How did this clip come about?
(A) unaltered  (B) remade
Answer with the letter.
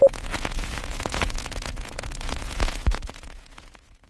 B